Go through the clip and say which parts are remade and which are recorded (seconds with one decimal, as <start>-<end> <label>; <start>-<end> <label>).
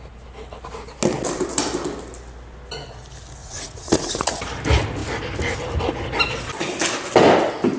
0.0-3.4 recorded; 3.4-4.4 remade; 4.4-7.8 recorded